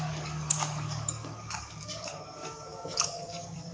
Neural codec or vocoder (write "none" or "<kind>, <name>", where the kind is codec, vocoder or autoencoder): codec, DAC